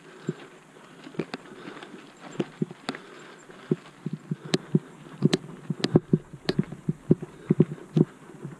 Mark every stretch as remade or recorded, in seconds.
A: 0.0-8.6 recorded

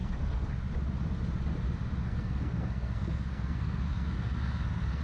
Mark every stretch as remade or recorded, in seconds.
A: 0.0-0.5 remade; 0.5-2.0 recorded; 2.0-5.0 remade

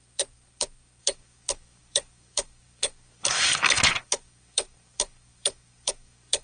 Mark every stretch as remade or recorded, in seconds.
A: 0.0-6.4 remade

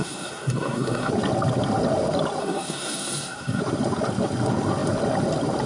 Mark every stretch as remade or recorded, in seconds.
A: 0.0-1.1 remade; 1.1-2.4 recorded; 2.4-3.6 remade; 3.6-5.7 recorded